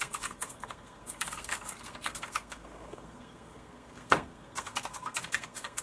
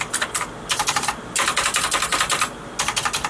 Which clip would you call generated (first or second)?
first